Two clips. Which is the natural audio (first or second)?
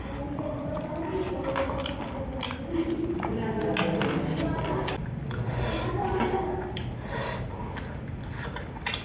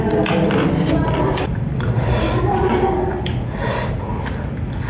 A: first